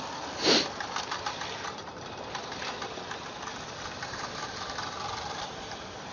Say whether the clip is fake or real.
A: fake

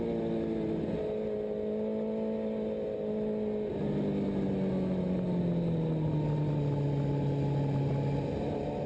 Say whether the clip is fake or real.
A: real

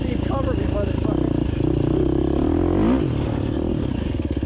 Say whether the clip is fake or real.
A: real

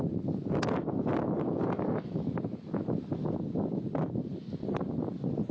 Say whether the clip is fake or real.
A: real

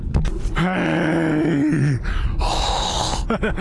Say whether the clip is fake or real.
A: real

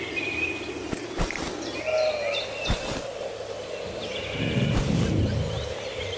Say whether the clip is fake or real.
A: real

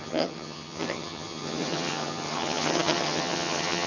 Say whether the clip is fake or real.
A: fake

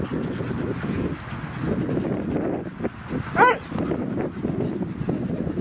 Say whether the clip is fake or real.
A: real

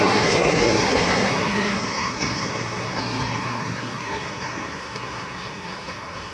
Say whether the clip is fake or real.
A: fake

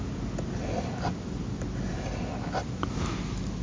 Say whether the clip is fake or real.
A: real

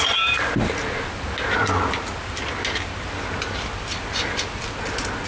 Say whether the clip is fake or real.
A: real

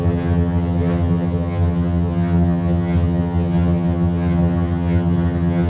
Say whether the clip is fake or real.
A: fake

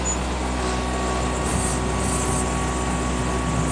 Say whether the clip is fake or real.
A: real